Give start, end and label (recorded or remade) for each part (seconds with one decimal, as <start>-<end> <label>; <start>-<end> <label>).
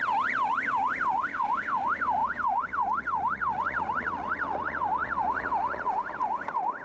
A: 0.0-6.8 remade